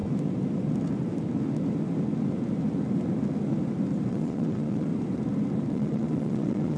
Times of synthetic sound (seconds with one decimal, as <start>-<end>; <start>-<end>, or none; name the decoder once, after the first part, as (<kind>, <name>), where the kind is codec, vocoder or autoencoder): 4.1-4.9 (vocoder, Vocos); 5.7-6.8